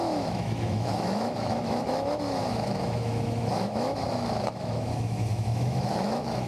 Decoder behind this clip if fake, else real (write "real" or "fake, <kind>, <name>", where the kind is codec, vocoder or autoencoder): fake, autoencoder, DAC-VAE